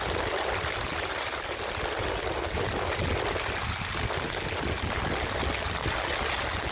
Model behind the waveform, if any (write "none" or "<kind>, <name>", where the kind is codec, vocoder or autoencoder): none